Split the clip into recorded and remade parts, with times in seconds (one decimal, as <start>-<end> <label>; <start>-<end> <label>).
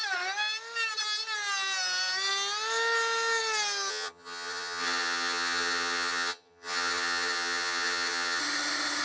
0.0-3.9 recorded; 3.9-8.4 remade; 8.4-9.0 recorded